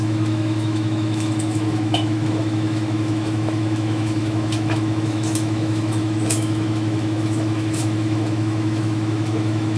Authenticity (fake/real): fake